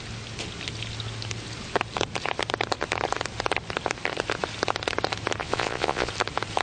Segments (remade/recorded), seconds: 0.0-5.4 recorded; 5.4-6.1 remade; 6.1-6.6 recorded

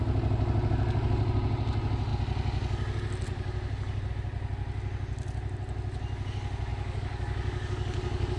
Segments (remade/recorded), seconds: 0.0-6.7 recorded; 6.7-8.4 remade

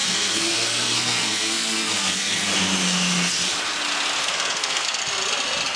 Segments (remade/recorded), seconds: 0.0-2.5 remade; 2.5-4.2 recorded; 4.2-5.0 remade; 5.0-5.8 recorded

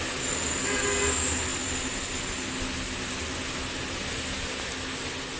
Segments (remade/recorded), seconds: 0.0-5.4 recorded

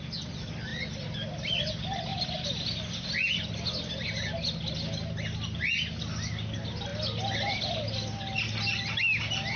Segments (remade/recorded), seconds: 0.0-6.9 recorded; 6.9-8.2 remade; 8.2-9.6 recorded

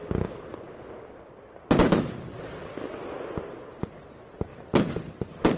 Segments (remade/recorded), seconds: 0.0-5.6 recorded